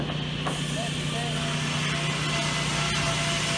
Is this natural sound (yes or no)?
yes